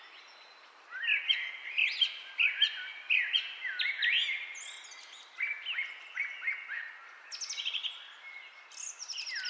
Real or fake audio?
real